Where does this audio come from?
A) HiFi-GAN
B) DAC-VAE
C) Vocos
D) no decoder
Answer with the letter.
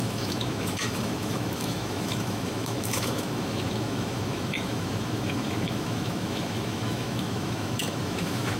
B